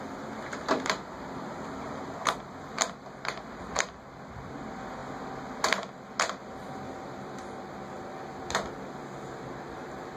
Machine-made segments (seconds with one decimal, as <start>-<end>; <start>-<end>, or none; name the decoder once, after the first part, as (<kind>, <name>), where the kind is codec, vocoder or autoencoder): none